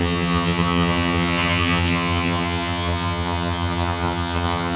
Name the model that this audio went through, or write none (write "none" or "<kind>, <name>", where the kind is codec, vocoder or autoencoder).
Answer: vocoder, HiFi-GAN